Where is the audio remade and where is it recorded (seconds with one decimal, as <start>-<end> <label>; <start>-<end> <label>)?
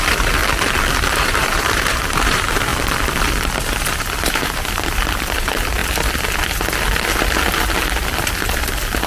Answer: 0.0-0.4 remade; 0.4-1.1 recorded; 1.1-2.7 remade; 2.7-4.2 recorded; 4.2-5.8 remade; 5.8-9.1 recorded